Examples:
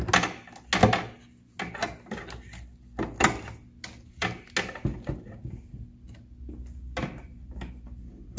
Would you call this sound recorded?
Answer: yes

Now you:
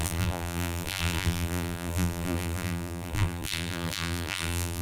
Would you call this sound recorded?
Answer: no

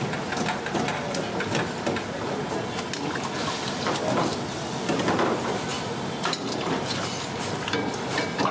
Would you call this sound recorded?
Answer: yes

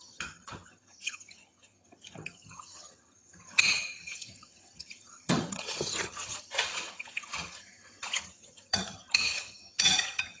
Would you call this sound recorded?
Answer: no